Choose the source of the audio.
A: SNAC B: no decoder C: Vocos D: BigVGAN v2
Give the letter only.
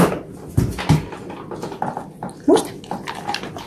B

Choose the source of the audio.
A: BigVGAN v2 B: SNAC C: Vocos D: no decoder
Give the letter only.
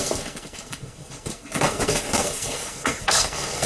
B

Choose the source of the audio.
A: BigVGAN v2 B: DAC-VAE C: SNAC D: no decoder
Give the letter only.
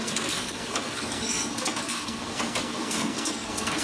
C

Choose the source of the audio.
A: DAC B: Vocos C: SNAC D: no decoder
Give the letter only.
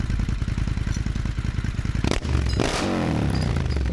D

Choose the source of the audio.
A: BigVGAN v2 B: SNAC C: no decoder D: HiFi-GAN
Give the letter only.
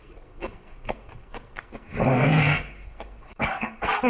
B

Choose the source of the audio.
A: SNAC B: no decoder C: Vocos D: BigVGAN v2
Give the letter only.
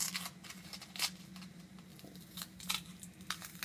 B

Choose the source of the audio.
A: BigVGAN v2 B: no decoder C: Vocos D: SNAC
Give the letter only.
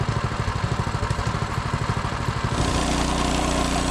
B